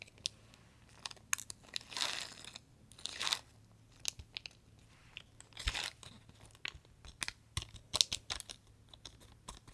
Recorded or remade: recorded